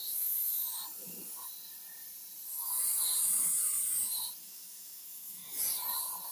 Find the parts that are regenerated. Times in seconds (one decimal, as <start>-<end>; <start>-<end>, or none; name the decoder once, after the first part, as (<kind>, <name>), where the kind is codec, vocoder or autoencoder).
0.0-0.6 (autoencoder, DAC-VAE); 4.4-5.4